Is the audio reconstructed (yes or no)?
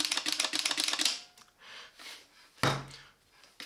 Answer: no